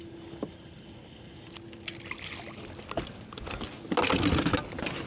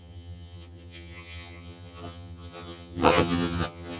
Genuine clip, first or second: first